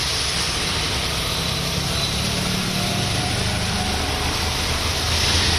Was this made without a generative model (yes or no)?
no